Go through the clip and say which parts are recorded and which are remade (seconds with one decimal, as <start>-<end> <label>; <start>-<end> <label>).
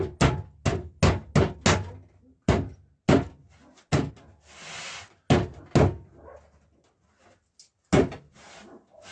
0.0-9.1 recorded